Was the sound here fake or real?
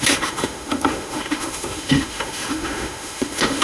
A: fake